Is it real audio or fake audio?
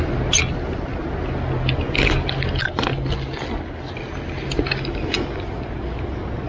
real